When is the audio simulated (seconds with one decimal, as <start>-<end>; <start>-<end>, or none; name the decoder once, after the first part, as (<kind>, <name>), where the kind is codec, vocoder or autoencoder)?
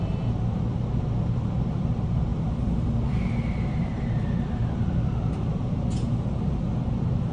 none